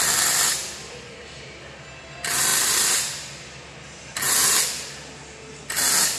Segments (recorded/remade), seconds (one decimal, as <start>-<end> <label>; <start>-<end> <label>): 0.0-6.2 recorded